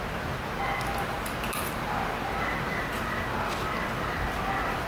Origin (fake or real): real